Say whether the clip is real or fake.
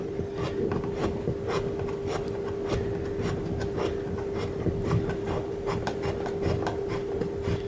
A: real